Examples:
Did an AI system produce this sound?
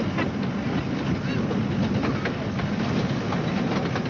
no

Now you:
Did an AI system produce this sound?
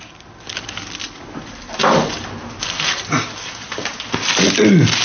no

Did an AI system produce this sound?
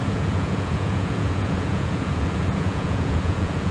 yes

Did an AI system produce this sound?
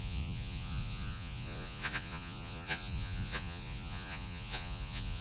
yes